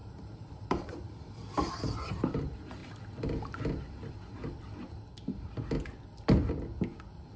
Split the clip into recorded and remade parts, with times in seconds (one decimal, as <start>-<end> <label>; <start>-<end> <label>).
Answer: 0.0-1.7 remade; 1.7-7.4 recorded